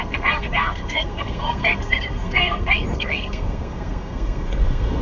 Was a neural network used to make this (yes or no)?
yes